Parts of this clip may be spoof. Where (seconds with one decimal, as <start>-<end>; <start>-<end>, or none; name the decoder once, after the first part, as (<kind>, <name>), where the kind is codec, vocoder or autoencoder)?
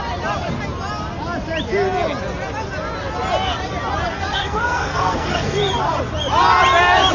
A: 4.3-5.6 (codec, SNAC)